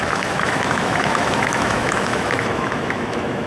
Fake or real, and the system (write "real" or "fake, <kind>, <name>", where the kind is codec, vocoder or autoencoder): fake, autoencoder, DAC-VAE